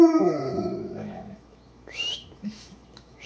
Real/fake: fake